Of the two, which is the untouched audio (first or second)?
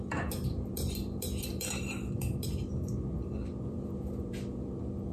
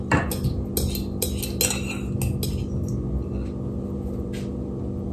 second